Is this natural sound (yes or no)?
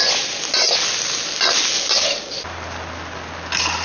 yes